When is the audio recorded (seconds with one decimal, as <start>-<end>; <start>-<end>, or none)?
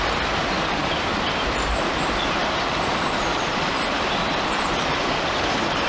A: 0.0-0.8; 1.4-2.4